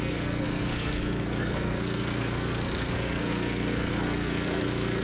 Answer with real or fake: fake